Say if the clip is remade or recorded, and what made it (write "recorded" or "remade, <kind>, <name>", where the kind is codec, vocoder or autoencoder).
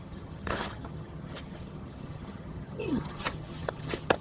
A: remade, vocoder, HiFi-GAN